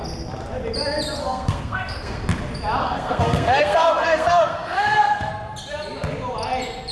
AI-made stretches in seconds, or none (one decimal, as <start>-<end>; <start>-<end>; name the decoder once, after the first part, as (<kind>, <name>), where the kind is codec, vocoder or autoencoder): 1.2-2.2 (codec, SNAC); 2.8-5.3